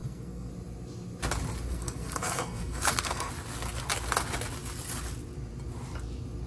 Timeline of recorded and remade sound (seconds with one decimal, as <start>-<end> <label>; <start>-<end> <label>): 0.0-0.5 remade; 0.5-1.7 recorded; 1.7-3.3 remade; 3.3-6.5 recorded